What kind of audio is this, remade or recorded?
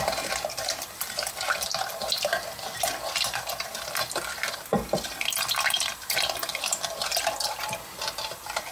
remade